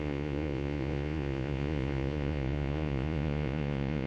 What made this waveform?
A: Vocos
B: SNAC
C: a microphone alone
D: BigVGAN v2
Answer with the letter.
A